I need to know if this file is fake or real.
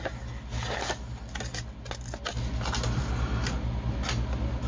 real